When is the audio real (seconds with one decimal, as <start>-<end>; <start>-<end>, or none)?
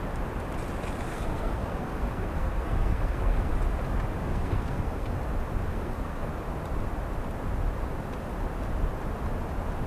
0.0-1.1; 3.5-4.2; 5.2-5.7; 6.3-9.9